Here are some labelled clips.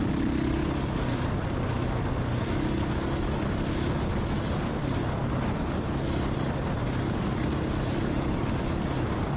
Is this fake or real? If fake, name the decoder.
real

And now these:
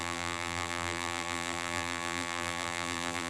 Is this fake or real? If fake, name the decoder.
fake, vocoder, BigVGAN v2